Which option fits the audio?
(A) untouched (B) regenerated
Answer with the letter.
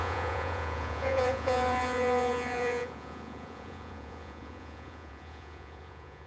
B